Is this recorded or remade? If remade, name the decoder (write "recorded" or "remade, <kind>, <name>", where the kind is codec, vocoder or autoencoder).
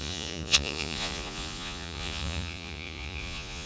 remade, vocoder, Vocos